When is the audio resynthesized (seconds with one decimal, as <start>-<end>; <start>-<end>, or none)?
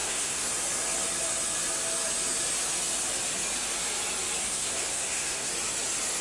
0.0-0.5; 4.4-5.5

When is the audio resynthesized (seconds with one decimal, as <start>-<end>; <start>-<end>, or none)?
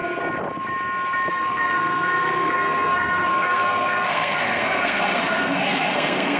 1.3-6.4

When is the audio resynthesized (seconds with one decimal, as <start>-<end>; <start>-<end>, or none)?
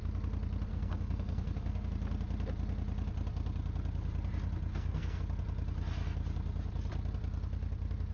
0.7-1.9; 4.7-5.2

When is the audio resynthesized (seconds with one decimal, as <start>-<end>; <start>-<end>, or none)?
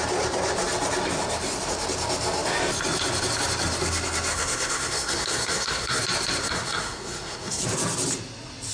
4.3-6.0; 6.4-7.6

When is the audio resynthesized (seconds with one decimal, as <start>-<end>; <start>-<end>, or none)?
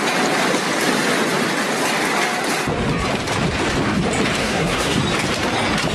4.4-5.0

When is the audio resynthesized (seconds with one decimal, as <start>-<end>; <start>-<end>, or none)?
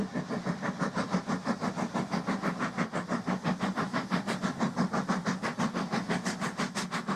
none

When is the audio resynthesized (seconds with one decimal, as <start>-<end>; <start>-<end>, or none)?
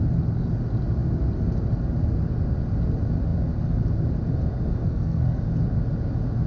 4.8-5.4